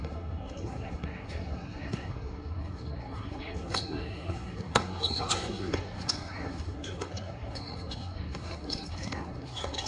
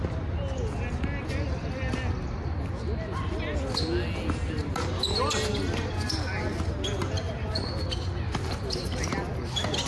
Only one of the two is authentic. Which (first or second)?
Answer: second